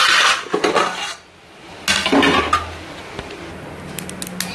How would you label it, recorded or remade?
recorded